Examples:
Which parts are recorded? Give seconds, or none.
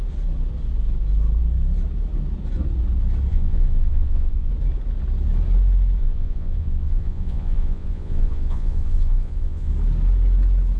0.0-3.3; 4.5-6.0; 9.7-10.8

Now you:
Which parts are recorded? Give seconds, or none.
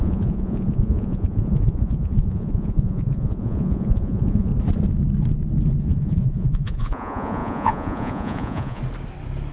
4.5-5.8; 8.8-9.5